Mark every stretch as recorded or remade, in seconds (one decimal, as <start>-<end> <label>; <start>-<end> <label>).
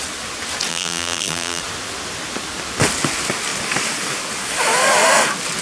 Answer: 0.0-0.7 recorded; 0.7-1.6 remade; 1.6-5.6 recorded